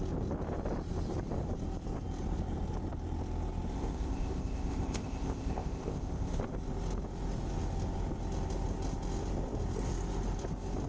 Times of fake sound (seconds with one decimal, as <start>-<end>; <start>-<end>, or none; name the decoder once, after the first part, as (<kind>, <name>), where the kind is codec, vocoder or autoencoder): 3.7-6.4 (codec, ZipCodec)